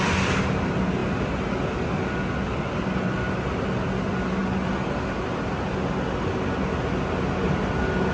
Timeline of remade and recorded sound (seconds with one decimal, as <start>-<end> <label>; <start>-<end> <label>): 0.0-8.1 recorded